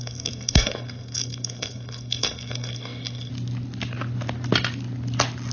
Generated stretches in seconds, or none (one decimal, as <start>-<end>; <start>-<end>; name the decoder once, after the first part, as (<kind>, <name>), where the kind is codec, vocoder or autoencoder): 0.0-3.3 (codec, SNAC)